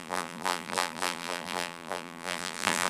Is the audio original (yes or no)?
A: no